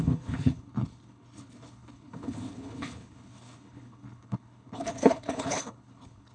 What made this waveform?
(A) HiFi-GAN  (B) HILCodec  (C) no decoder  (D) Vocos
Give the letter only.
B